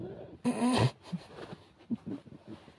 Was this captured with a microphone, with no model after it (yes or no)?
yes